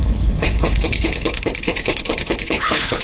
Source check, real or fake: fake